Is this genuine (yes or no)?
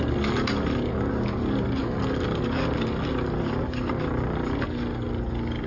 yes